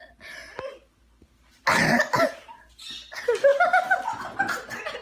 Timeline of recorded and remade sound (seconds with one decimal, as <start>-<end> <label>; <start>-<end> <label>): 0.0-5.0 recorded